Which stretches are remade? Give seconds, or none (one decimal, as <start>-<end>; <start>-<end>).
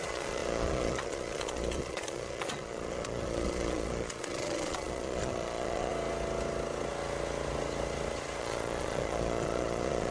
0.0-5.9; 8.4-10.1